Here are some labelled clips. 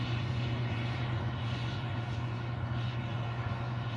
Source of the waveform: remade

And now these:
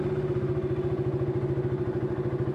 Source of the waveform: recorded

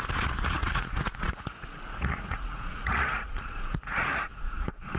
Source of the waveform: remade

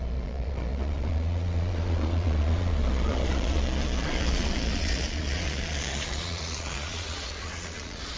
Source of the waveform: remade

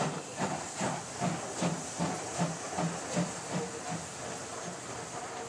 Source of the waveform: recorded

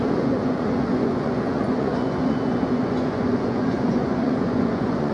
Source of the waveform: remade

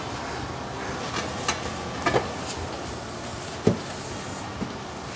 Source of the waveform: recorded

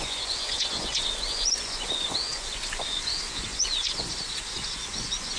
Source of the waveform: remade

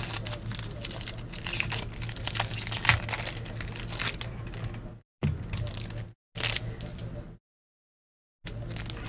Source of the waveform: recorded